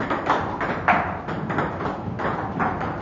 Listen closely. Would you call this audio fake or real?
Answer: real